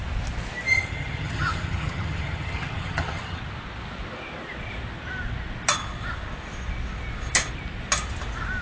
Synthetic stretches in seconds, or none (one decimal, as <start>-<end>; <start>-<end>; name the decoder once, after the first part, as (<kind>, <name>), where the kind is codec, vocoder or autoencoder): 0.7-3.4 (vocoder, HiFi-GAN)